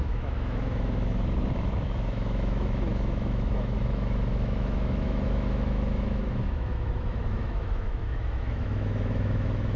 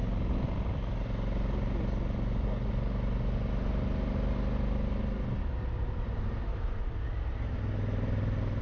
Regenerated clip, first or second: first